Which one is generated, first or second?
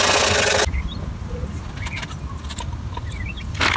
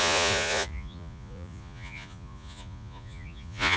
second